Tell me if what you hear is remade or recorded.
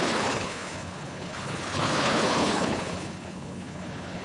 remade